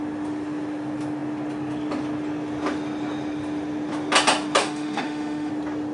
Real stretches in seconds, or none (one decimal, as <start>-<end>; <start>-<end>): 0.0-4.6; 5.5-5.9